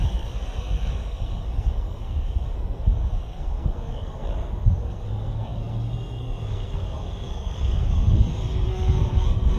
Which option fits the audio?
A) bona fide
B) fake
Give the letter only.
B